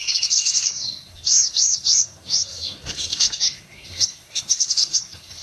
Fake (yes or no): yes